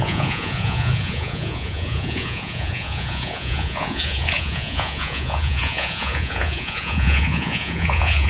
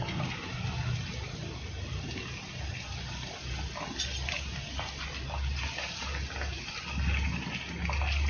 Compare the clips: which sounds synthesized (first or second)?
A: first